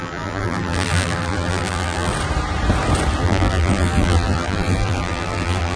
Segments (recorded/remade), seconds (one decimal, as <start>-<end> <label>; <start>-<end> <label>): 0.0-2.1 remade; 2.1-3.2 recorded; 3.2-5.8 remade